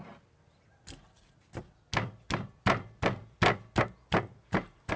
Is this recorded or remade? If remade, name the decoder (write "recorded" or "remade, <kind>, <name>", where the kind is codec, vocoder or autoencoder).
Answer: recorded